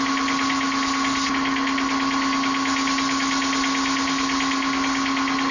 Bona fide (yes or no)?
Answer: yes